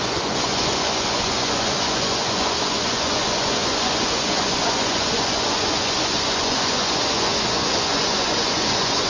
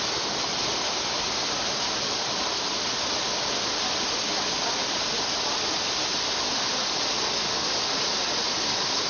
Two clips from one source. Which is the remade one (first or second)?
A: first